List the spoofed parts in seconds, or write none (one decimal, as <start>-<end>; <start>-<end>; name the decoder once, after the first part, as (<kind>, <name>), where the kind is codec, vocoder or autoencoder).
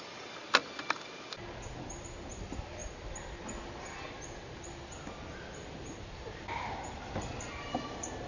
0.0-0.4 (vocoder, BigVGAN v2); 2.0-2.8; 7.4-8.3